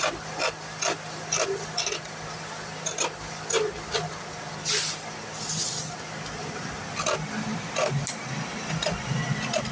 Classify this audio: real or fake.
real